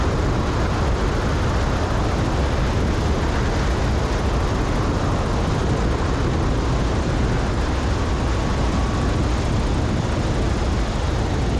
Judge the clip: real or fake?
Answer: real